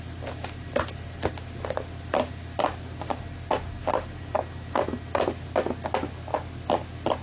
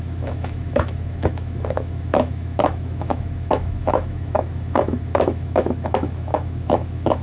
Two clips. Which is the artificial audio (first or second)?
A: second